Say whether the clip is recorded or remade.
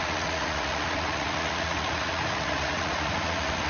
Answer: remade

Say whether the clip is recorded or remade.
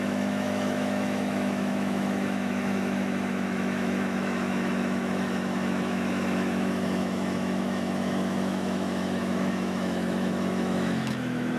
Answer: remade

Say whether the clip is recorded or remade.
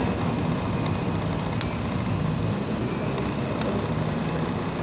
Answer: recorded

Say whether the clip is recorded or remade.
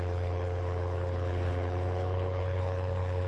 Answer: remade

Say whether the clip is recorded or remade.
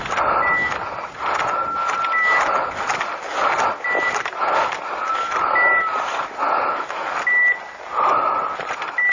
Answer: recorded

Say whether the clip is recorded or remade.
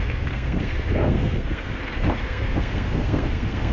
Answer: remade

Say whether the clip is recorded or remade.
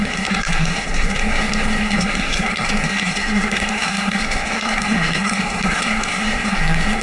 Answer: remade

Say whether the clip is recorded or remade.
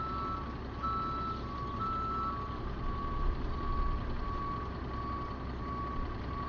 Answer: recorded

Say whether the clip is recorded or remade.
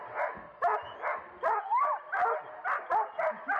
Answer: recorded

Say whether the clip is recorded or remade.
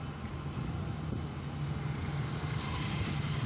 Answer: recorded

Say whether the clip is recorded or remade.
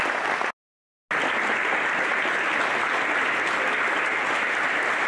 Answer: recorded